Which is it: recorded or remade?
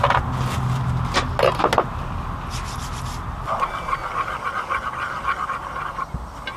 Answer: recorded